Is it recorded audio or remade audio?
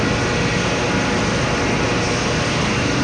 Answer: recorded